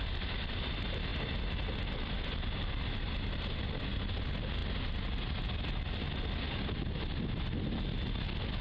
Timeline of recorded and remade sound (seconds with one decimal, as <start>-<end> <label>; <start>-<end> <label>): 0.0-8.6 recorded

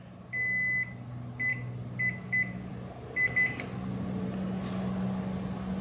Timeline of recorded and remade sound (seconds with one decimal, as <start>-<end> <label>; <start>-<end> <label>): 0.0-5.8 recorded

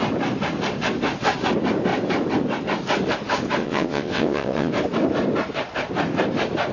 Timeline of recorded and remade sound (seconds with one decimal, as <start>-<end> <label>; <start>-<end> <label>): 0.0-3.6 recorded; 3.6-4.7 remade; 4.7-6.7 recorded

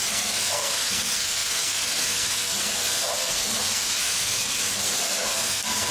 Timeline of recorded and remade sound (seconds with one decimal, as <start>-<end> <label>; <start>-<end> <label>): 0.0-5.9 remade